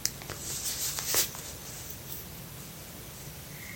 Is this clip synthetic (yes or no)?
no